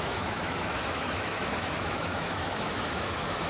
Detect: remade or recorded remade